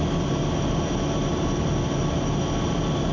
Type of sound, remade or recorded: recorded